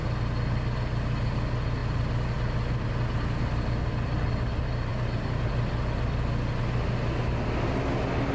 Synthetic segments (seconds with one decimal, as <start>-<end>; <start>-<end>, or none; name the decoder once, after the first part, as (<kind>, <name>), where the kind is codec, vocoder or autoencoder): none